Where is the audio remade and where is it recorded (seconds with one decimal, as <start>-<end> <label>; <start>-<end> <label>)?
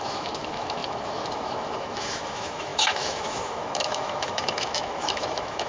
0.0-5.7 remade